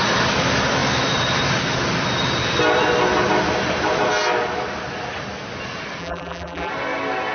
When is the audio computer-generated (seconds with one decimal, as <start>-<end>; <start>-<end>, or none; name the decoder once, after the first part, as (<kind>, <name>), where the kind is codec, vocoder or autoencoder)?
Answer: 6.0-6.7 (vocoder, BigVGAN v2)